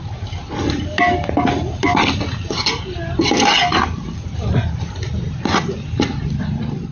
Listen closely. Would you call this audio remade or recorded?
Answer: recorded